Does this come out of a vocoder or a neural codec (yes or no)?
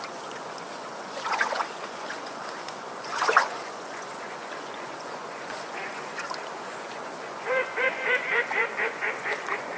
yes